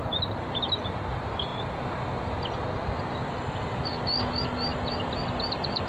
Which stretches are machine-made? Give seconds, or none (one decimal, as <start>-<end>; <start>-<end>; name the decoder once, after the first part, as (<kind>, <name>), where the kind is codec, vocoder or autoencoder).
none